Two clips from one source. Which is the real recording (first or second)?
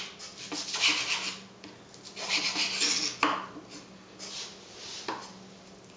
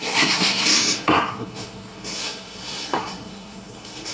first